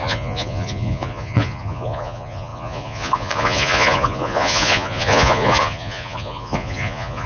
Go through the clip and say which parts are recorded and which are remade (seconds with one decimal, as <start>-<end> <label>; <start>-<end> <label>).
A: 0.0-7.3 remade